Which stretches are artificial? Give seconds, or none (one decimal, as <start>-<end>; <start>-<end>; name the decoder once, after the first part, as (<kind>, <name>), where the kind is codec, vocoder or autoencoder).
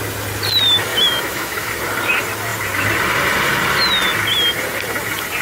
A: 0.9-1.7 (autoencoder, DAC-VAE)